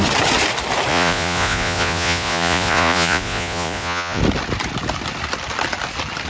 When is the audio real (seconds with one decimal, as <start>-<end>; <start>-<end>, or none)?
0.0-0.9; 4.2-6.3